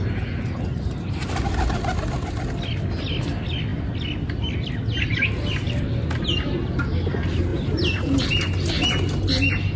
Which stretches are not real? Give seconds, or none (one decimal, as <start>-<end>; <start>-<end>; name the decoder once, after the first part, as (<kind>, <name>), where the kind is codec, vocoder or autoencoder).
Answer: none